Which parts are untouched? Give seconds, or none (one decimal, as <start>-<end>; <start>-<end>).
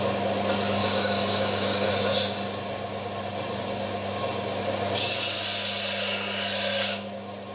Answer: 0.0-0.8; 1.9-7.5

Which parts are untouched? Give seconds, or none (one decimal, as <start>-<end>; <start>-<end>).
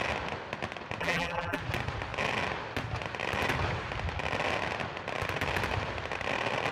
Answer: 0.0-1.0; 1.6-6.7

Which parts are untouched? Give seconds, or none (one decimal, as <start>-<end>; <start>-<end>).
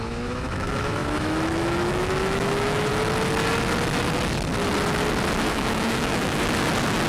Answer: 2.9-5.5; 6.4-7.1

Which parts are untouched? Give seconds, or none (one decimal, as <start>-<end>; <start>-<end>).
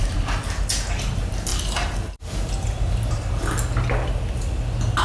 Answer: 0.0-5.0